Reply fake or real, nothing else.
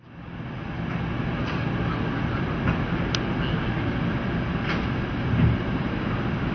real